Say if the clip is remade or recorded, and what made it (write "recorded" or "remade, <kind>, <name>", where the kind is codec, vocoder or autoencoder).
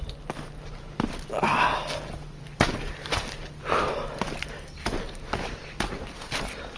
recorded